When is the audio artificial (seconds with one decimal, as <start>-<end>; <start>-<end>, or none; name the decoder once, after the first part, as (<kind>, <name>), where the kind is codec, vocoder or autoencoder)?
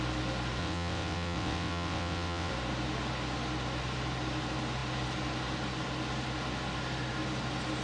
0.6-2.5 (vocoder, WaveNeXt)